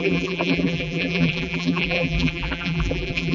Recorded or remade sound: remade